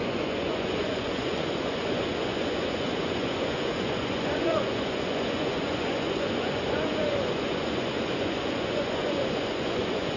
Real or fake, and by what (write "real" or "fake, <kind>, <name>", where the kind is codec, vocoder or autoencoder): fake, vocoder, Vocos